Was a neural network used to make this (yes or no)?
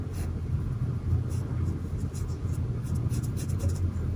no